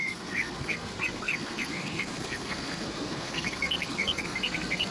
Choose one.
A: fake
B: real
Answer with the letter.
A